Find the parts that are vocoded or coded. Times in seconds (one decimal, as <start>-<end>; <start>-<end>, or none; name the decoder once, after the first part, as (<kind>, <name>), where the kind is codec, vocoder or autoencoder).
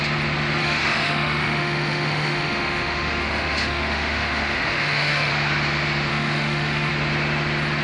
0.6-5.3 (autoencoder, DAC-VAE); 6.1-6.9